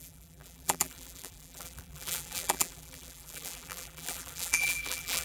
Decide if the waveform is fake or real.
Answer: fake